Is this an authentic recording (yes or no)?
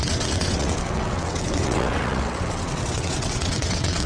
no